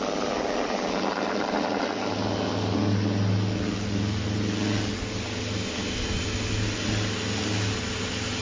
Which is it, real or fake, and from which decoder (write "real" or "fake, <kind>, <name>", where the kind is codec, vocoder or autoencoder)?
real